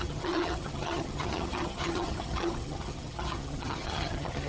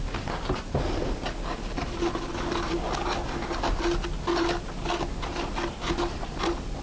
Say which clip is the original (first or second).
second